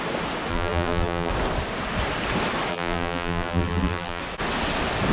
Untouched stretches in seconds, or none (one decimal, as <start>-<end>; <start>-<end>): 0.0-0.5; 1.3-2.7; 4.2-5.1